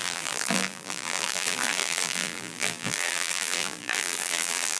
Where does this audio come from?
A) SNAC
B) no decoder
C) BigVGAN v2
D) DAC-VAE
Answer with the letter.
C